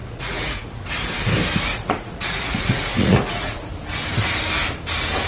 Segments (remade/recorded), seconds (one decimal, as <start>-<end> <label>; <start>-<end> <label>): 0.0-0.8 remade; 0.8-1.7 recorded; 1.7-3.7 remade; 3.7-5.3 recorded